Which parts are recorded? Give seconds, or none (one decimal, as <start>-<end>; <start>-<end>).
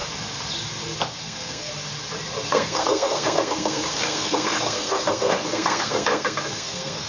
0.0-1.2; 1.7-2.5